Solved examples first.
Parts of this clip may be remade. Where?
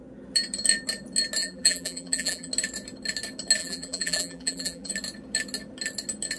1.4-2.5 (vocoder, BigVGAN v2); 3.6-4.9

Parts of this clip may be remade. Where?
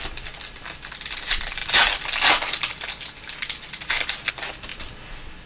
none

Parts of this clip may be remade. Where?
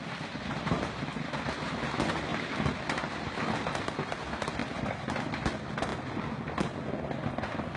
4.6-5.3 (vocoder, BigVGAN v2)